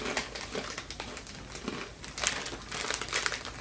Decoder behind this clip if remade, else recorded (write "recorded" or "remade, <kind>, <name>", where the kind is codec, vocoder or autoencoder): recorded